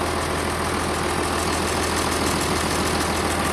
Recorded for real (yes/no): yes